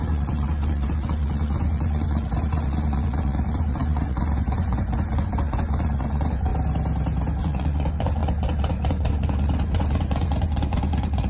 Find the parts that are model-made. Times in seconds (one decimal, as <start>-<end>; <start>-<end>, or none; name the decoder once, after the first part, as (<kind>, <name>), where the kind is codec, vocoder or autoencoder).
0.0-6.5 (vocoder, Vocos); 7.4-11.3

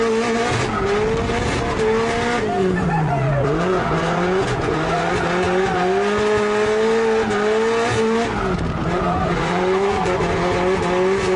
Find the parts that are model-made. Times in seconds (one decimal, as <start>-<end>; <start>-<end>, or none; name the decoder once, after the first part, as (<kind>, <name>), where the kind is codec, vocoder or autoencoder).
2.6-5.1 (vocoder, Vocos); 8.8-10.2

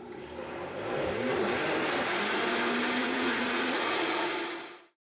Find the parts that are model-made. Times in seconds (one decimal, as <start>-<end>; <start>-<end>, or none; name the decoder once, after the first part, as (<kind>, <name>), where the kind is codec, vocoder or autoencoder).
3.0-4.3 (vocoder, Vocos)

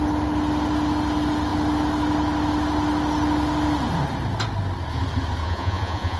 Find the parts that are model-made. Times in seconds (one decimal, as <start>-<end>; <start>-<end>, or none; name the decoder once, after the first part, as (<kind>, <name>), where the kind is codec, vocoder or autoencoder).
5.4-6.2 (vocoder, Vocos)